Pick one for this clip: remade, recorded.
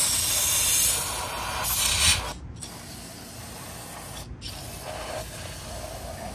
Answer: recorded